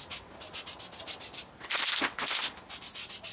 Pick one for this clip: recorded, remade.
recorded